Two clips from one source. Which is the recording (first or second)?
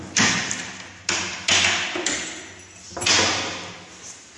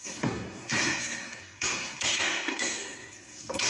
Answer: first